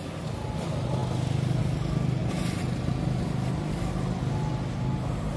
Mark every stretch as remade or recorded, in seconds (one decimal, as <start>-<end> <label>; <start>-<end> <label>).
0.0-2.2 recorded; 2.2-2.9 remade; 2.9-5.4 recorded